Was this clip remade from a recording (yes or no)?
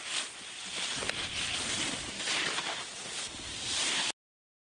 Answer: no